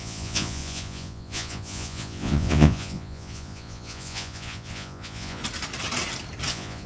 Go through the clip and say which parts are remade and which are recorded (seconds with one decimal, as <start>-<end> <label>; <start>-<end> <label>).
0.0-5.4 remade; 5.4-6.5 recorded; 6.5-6.9 remade